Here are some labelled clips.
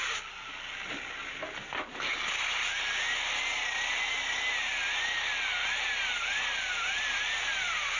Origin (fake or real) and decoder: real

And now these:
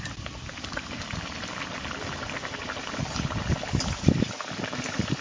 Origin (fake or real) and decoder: real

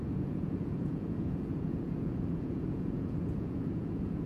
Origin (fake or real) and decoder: fake, vocoder, Vocos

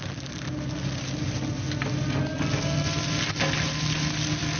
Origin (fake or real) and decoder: real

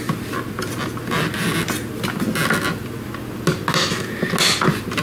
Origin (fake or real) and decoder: real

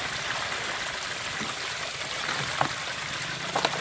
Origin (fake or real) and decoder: real